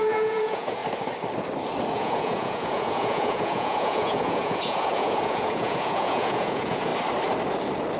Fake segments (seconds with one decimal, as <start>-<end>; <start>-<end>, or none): 0.0-0.8; 1.9-6.9